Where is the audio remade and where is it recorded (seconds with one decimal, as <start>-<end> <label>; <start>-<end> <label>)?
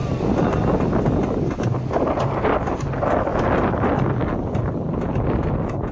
0.0-5.9 recorded